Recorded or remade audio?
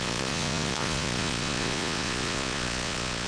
remade